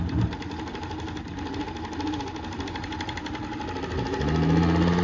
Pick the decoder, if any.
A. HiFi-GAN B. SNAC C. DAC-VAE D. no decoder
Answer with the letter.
D